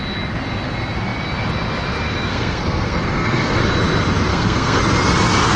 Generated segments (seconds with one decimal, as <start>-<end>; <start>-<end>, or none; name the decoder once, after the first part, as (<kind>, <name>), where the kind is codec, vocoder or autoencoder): 2.3-3.6 (codec, SNAC); 4.3-4.8